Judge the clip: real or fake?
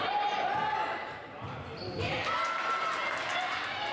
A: real